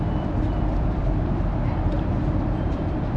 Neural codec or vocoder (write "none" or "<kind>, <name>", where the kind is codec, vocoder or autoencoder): vocoder, BigVGAN v2